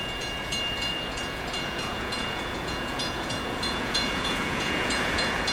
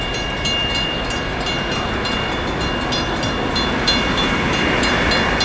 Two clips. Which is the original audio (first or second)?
second